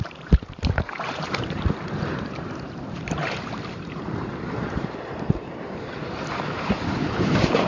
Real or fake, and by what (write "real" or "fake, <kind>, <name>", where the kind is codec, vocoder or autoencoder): fake, vocoder, BigVGAN v2